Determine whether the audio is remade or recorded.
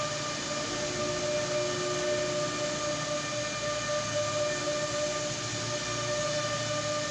recorded